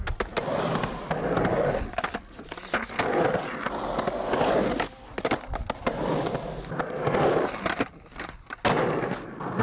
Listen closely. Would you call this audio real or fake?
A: real